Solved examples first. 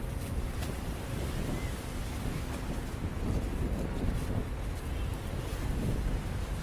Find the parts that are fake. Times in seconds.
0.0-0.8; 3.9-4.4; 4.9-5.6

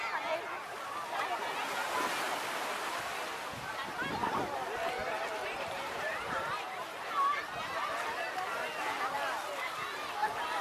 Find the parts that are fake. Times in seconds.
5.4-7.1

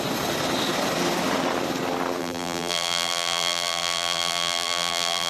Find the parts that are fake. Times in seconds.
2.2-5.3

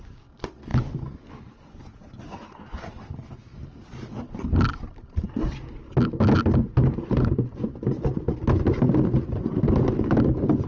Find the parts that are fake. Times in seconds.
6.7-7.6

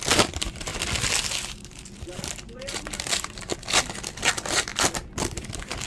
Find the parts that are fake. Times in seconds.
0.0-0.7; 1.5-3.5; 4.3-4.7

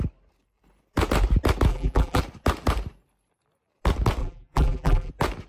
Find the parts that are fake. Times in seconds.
1.7-2.2; 4.2-5.1